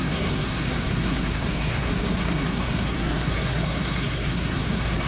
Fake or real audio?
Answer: fake